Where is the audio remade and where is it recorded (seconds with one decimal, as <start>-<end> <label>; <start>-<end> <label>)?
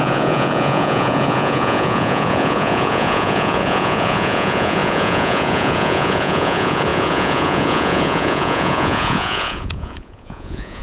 0.0-10.8 remade